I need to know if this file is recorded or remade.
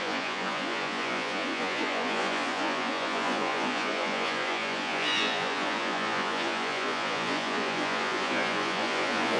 remade